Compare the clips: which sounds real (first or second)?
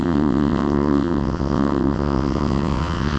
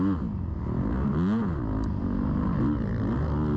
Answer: second